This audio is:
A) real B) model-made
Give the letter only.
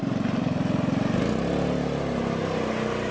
A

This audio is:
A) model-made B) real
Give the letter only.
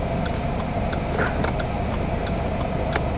B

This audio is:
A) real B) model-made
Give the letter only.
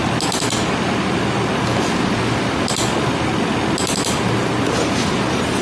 A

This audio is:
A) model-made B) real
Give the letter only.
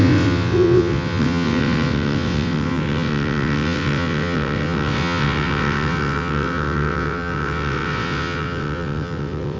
A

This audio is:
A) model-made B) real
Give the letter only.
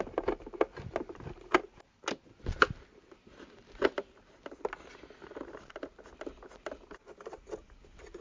B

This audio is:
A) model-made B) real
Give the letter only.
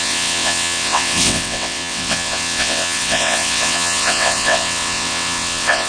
A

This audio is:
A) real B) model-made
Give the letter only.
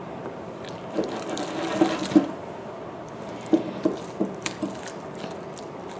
A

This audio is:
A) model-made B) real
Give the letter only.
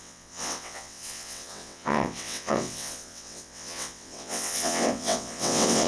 A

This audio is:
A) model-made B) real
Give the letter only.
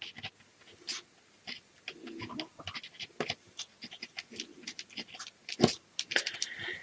B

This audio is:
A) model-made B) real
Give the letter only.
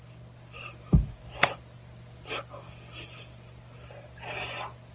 B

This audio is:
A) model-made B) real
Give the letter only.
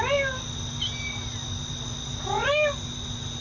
B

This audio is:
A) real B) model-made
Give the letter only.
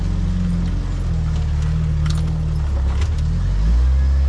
A